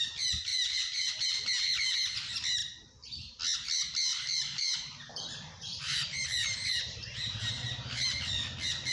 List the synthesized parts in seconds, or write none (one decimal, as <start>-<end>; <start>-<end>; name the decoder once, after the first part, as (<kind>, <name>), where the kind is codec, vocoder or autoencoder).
0.5-1.1 (vocoder, BigVGAN v2); 2.6-3.4; 4.1-8.3